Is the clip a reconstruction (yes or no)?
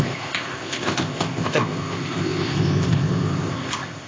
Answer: yes